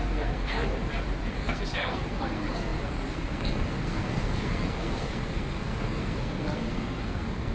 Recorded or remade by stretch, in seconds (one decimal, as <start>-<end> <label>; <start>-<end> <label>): 0.0-0.7 remade; 0.7-1.3 recorded; 1.3-7.5 remade